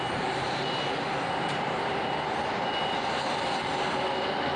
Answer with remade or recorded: recorded